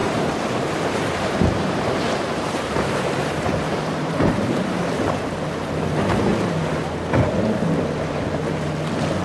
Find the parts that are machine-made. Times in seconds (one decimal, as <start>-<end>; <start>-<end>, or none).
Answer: 0.0-5.1; 6.3-6.8